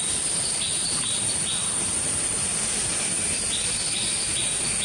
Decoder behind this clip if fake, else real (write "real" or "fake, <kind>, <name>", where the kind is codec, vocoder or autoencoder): real